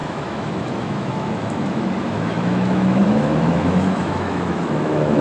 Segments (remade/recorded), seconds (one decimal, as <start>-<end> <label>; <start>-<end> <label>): 0.0-5.2 remade